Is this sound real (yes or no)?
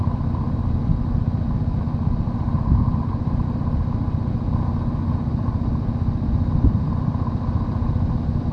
yes